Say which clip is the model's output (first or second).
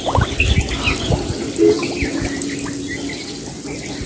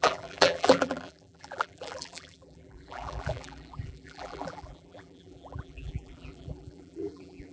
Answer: second